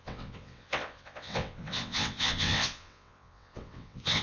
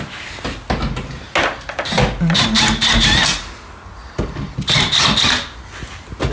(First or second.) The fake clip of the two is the first